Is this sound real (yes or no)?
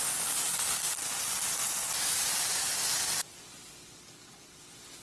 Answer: yes